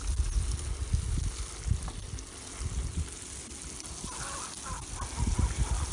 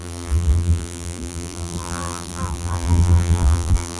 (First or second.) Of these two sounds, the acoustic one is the first